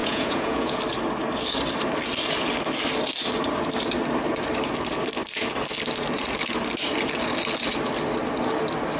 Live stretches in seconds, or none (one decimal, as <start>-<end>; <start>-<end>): 0.8-9.0